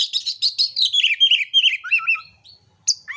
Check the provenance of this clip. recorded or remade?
recorded